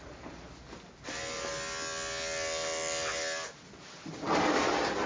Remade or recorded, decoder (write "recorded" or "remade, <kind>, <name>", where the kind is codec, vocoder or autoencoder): recorded